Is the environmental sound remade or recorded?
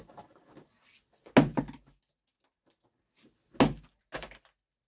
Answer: recorded